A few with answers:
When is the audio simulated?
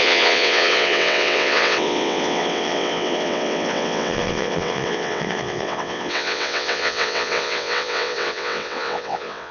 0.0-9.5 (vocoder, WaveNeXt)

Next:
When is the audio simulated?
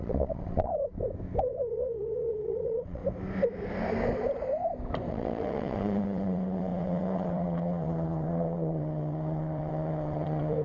0.0-0.7 (vocoder, WaveNeXt); 1.7-3.0; 5.1-10.6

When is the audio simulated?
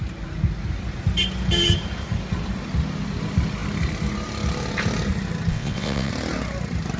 5.5-6.1 (vocoder, WaveNeXt)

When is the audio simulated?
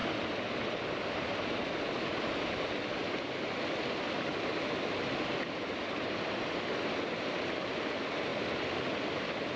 none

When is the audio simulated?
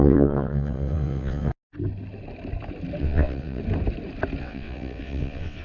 0.0-1.5 (vocoder, WaveNeXt); 3.0-3.6; 4.4-5.6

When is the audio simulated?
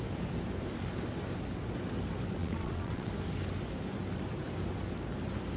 2.4-3.1 (vocoder, WaveNeXt)